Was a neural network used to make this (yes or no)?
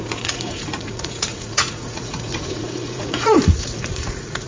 yes